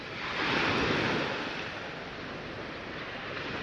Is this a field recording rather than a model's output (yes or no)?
yes